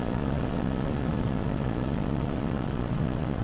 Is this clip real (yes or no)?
no